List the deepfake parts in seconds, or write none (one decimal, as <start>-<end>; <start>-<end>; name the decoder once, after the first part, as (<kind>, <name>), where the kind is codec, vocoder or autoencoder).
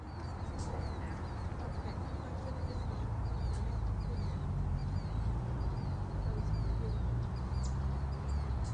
none